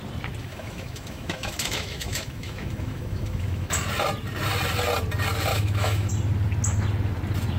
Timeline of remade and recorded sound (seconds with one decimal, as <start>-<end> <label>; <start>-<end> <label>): 0.0-0.4 recorded; 0.4-3.8 remade; 3.8-5.5 recorded; 5.5-6.1 remade; 6.1-7.6 recorded